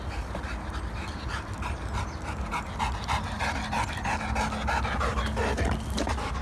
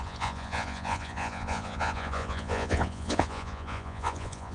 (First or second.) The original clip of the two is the first